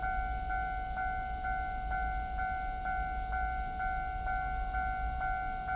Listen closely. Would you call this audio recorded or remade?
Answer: recorded